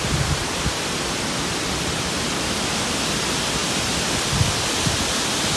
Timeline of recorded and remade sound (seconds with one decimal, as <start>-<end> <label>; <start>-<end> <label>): 0.0-5.6 recorded